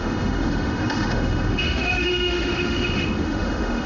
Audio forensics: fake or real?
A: fake